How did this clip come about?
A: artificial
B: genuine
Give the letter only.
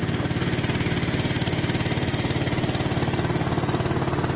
B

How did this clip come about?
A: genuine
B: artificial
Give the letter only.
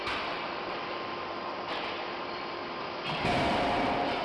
B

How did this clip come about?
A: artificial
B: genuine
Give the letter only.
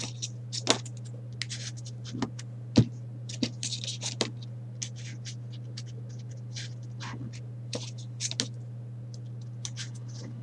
B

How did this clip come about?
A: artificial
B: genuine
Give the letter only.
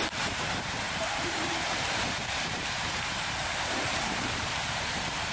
A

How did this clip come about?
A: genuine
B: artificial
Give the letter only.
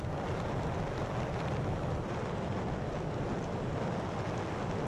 A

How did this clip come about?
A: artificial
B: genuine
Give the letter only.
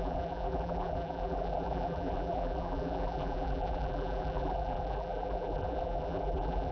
A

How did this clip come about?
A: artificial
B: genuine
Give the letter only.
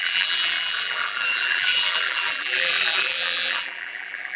A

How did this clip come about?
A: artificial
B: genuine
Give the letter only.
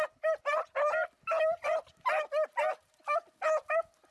B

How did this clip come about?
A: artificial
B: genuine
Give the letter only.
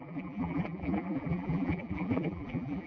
A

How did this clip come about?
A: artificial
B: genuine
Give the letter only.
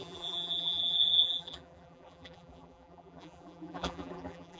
A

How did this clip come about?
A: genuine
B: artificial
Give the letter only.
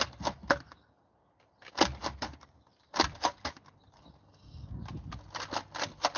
A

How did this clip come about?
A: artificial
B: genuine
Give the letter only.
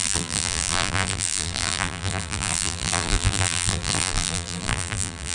A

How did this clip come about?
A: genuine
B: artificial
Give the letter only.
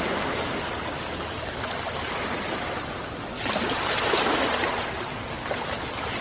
A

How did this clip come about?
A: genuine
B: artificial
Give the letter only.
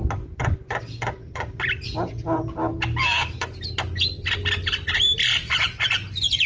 A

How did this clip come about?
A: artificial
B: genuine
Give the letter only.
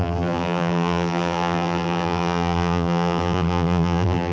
A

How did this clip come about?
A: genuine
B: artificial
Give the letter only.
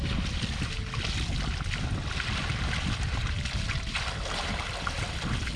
A